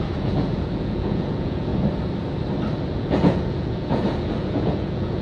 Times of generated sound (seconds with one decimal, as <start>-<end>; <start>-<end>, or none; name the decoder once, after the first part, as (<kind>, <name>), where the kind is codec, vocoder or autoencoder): 0.0-1.7 (vocoder, Vocos); 2.9-5.2